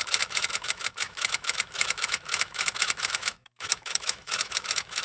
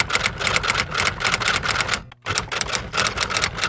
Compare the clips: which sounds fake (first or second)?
first